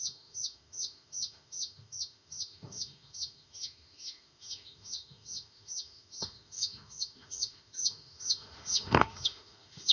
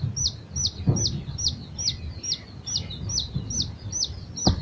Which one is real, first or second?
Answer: second